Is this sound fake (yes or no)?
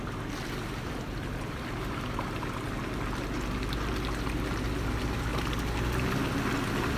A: no